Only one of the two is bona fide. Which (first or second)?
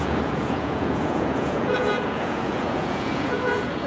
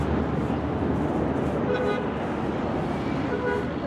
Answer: second